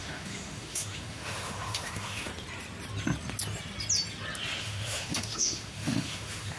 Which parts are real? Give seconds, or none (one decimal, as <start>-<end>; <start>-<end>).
2.3-4.6